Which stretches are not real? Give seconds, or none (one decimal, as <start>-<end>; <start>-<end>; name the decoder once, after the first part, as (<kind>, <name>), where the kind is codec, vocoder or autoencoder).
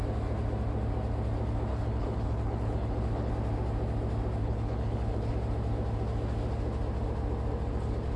1.7-3.3 (codec, HILCodec); 4.4-5.3